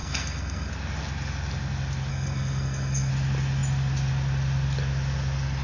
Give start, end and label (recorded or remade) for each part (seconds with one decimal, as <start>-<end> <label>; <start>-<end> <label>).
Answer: 0.0-0.7 remade; 0.7-2.1 recorded; 2.1-3.1 remade; 3.1-5.6 recorded